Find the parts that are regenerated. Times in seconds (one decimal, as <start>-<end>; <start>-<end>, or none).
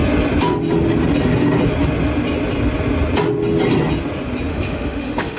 4.5-5.4